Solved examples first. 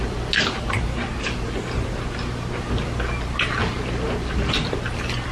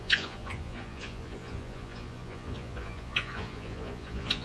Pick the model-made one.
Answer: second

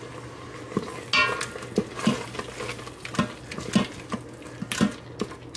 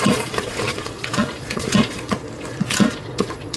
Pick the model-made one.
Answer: second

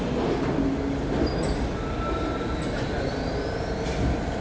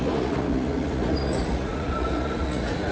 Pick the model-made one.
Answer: second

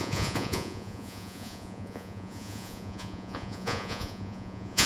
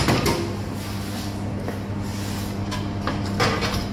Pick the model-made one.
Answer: first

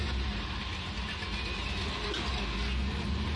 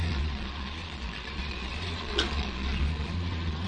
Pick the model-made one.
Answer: second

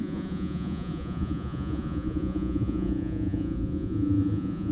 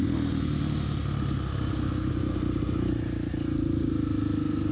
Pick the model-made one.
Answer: first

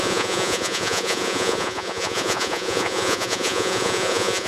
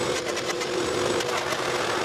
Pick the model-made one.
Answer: first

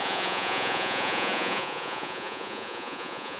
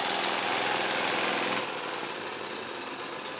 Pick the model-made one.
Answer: first